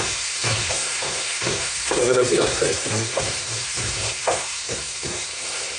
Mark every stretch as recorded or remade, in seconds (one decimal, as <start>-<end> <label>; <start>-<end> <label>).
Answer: 0.0-5.8 remade